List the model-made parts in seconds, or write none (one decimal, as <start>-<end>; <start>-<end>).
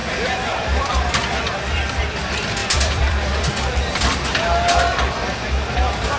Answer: 0.0-2.0; 2.6-4.3